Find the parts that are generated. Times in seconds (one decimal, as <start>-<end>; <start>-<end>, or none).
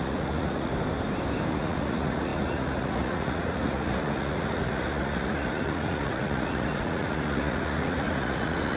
0.0-0.7; 1.5-8.8